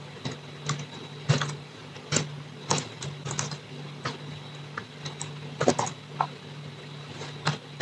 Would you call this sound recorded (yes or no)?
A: yes